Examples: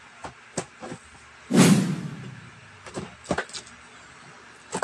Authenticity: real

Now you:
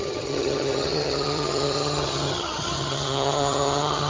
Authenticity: fake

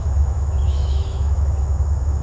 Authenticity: fake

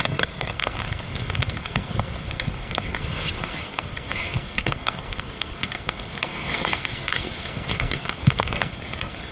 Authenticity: fake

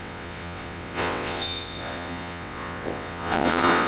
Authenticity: fake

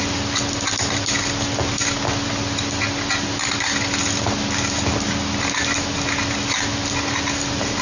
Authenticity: real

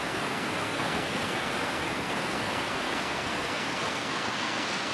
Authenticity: fake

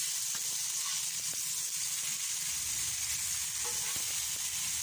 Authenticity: real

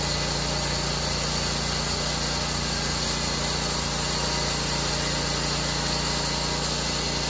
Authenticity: real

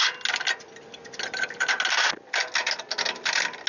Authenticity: real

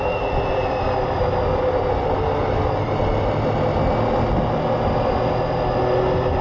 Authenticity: real